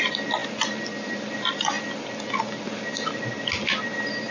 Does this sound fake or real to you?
real